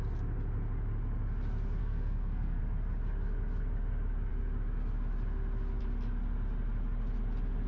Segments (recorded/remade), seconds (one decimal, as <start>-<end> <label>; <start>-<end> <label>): 0.0-1.8 recorded; 1.8-2.6 remade; 2.6-7.7 recorded